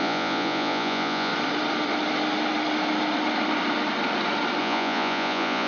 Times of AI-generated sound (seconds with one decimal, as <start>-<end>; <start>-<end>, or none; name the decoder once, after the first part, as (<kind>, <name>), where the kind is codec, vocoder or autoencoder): 0.0-1.3 (vocoder, Vocos); 4.6-5.7